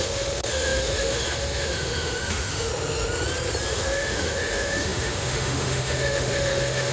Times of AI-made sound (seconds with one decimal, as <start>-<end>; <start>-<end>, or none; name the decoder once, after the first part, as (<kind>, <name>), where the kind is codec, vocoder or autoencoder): 0.0-2.7 (autoencoder, DAC-VAE); 3.7-6.9